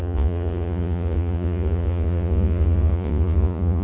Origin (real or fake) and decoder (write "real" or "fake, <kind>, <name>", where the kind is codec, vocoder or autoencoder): fake, vocoder, Vocos